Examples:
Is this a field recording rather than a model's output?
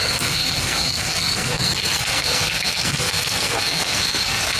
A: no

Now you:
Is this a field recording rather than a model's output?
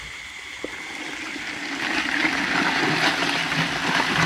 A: yes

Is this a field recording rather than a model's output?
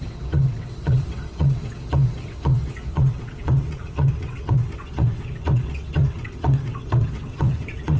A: no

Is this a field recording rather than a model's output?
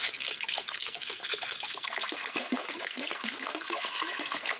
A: no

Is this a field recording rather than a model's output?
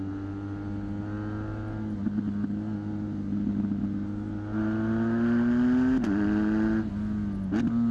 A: yes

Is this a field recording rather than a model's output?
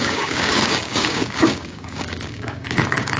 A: no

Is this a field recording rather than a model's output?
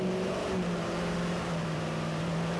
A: no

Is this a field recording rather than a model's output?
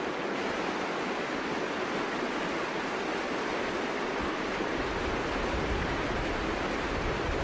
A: yes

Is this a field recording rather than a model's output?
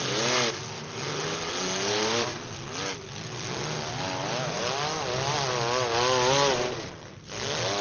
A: yes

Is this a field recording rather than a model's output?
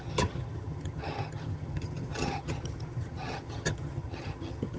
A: no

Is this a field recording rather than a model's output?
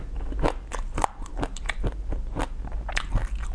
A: yes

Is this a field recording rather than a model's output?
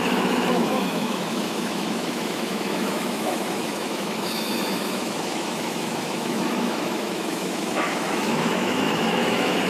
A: no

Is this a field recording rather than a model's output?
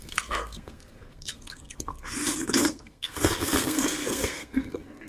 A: no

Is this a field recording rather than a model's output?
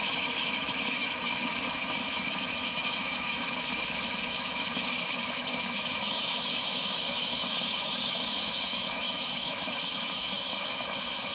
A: no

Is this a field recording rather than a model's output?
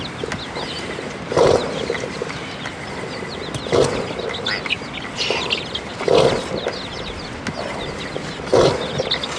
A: yes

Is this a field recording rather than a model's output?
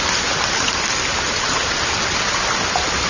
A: yes